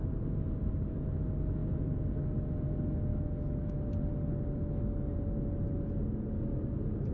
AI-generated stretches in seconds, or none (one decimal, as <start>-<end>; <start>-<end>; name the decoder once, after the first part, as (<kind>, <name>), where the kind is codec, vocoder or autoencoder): 3.1-3.9 (autoencoder, DAC-VAE)